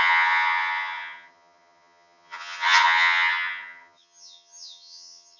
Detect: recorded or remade remade